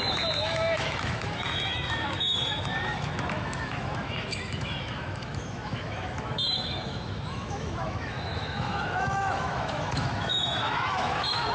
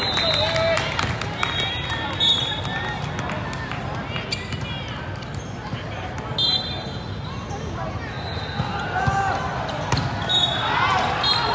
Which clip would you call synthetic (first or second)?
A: first